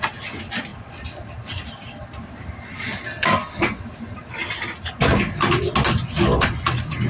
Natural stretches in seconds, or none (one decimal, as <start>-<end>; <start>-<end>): 0.0-7.1